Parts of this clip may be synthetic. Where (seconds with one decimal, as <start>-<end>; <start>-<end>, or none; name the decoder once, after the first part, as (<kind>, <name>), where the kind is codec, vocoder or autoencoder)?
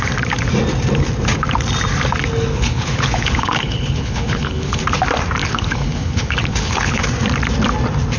2.5-4.8 (codec, HILCodec); 5.4-7.1